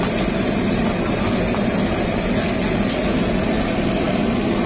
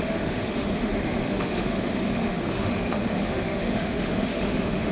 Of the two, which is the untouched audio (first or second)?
first